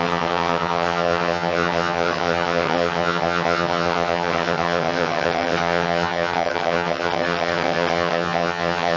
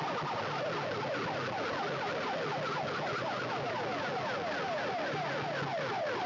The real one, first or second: second